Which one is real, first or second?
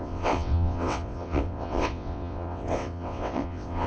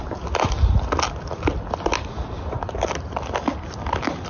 second